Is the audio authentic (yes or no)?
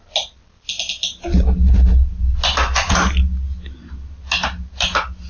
yes